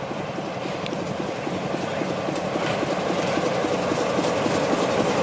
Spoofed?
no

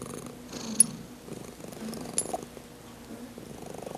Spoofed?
no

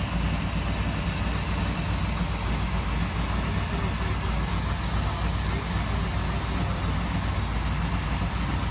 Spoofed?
no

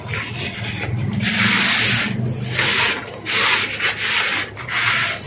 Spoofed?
no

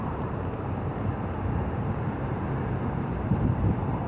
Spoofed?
yes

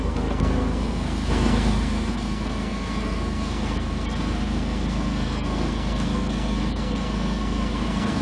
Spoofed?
yes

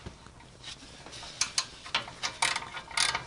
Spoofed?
no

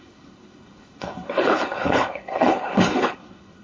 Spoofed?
yes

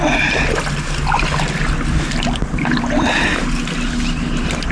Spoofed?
no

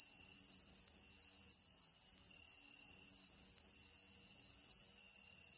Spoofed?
no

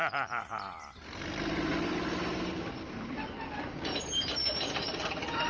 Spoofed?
yes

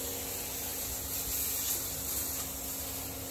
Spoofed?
no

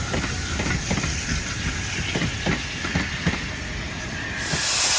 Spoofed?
no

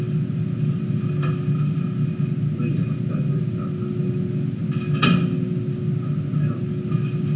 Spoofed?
no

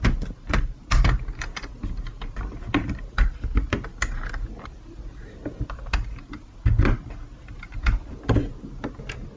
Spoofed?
no